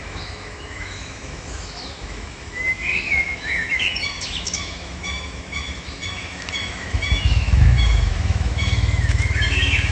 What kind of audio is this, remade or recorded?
remade